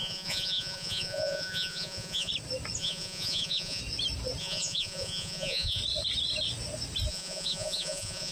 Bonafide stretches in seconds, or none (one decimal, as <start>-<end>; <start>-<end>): 2.3-2.8; 3.8-4.4; 5.8-7.1